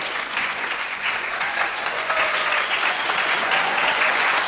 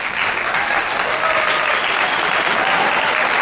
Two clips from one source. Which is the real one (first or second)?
second